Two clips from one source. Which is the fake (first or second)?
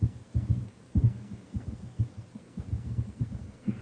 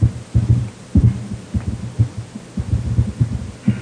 first